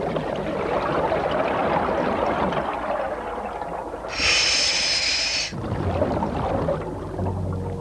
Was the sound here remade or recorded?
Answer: recorded